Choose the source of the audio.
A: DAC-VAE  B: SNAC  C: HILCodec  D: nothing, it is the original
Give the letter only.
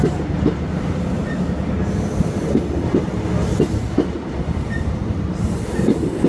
D